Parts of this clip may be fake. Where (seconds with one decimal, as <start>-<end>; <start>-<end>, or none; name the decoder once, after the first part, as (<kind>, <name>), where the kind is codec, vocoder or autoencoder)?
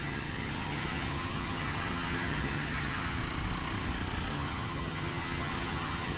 0.0-3.2 (vocoder, HiFi-GAN); 4.3-6.2